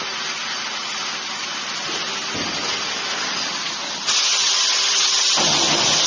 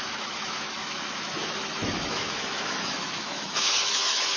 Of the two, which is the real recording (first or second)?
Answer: first